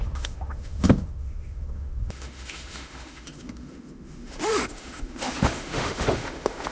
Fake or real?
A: fake